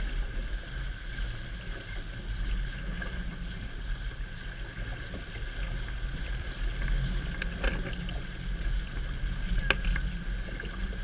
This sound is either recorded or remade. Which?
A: recorded